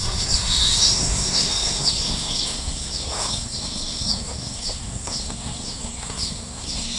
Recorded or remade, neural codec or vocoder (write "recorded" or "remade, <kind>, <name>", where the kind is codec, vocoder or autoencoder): remade, codec, SNAC